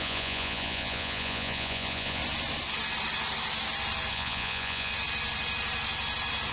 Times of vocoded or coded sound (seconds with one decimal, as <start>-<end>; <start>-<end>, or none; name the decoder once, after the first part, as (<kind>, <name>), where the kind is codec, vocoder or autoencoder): 0.0-2.2 (vocoder, Vocos); 4.1-4.9